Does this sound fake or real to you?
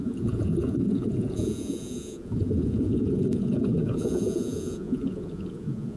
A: fake